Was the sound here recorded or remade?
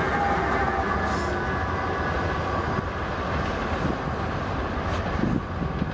recorded